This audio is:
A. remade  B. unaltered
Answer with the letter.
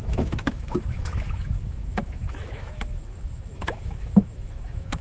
A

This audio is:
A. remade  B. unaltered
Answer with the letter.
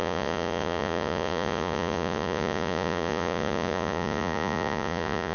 A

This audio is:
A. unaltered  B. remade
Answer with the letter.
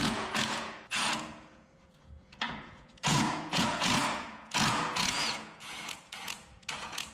B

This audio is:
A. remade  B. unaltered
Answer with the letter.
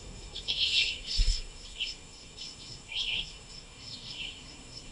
A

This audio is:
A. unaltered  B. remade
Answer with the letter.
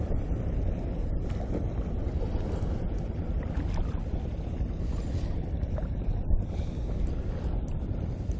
A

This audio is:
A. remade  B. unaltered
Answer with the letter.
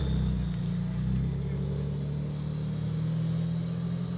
B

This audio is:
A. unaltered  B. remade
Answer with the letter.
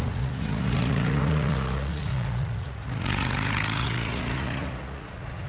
B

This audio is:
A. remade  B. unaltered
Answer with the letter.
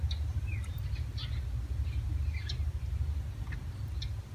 B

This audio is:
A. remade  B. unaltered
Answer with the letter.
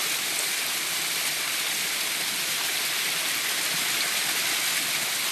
B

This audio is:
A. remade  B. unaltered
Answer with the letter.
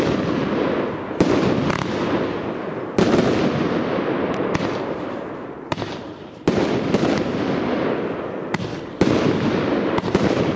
B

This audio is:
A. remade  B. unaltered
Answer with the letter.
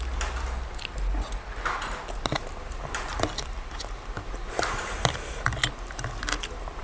B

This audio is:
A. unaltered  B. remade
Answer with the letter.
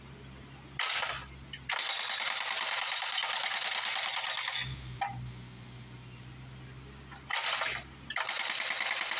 A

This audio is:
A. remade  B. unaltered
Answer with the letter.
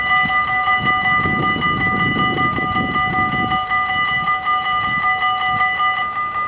B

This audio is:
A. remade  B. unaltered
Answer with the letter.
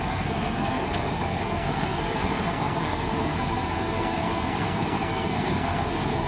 A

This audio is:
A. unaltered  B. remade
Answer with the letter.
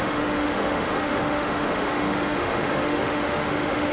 B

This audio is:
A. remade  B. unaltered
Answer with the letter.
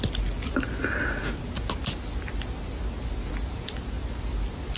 B